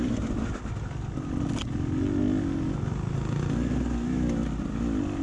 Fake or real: real